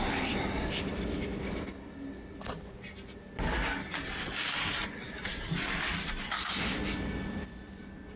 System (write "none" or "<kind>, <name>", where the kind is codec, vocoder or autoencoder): none